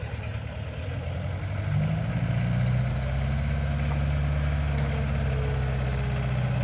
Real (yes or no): yes